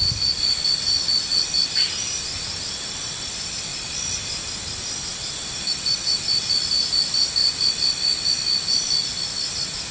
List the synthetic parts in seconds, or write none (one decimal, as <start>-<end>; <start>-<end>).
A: none